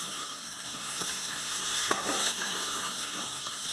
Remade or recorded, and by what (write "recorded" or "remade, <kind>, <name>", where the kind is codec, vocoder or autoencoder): remade, codec, SNAC